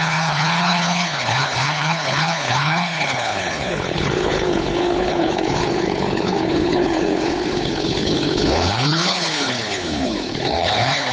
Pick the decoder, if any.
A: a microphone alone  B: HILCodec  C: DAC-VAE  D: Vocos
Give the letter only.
B